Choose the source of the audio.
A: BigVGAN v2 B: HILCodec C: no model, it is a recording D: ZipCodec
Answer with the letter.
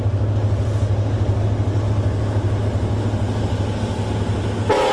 C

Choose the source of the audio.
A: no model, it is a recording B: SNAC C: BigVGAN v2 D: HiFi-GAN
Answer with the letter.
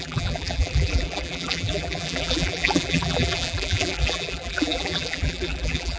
C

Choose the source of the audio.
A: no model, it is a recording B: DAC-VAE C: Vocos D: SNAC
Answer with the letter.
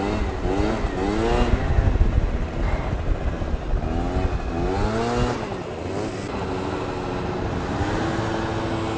A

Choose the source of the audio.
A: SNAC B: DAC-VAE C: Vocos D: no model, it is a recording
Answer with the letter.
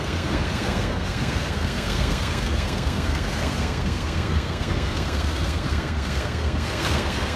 A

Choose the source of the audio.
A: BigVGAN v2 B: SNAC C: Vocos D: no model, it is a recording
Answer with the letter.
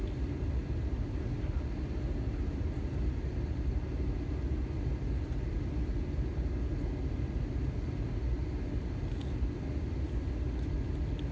D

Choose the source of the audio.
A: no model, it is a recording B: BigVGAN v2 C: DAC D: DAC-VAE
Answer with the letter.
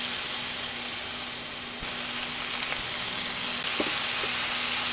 A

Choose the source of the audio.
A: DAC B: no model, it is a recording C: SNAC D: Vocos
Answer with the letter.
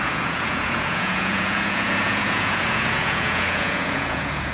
D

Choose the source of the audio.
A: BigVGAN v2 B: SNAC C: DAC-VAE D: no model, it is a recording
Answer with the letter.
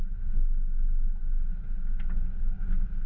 D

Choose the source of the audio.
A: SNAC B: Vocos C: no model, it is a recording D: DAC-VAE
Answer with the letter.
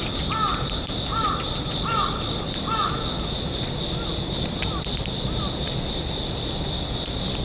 C